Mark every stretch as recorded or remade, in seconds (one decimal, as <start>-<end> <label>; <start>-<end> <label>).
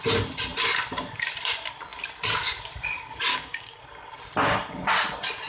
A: 0.0-3.3 recorded; 3.3-3.8 remade; 3.8-5.5 recorded